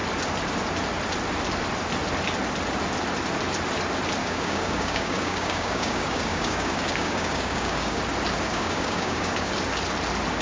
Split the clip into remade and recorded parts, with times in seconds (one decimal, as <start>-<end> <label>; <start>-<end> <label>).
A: 0.0-4.2 recorded; 4.2-8.0 remade; 8.0-8.5 recorded; 8.5-9.5 remade; 9.5-10.4 recorded